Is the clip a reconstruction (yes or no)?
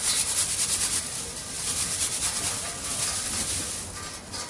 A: no